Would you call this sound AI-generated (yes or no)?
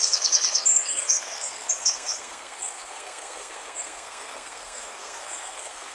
yes